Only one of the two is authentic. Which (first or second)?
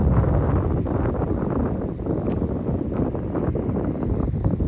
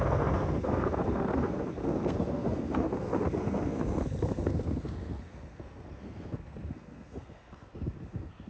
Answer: first